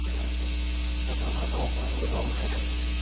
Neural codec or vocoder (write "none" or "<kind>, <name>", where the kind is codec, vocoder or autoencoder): none